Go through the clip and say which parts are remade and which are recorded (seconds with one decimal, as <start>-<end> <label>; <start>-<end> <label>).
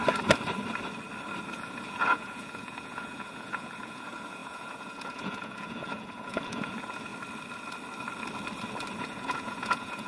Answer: 0.0-1.5 recorded; 1.5-7.1 remade; 7.1-9.0 recorded; 9.0-10.1 remade